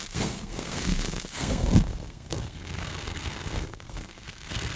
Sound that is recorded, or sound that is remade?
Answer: remade